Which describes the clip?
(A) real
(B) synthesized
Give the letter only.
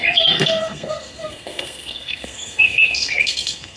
B